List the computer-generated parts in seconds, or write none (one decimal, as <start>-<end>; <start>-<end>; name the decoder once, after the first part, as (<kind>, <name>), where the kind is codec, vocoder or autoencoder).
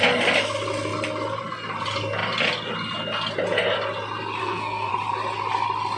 4.4-4.9 (codec, SNAC)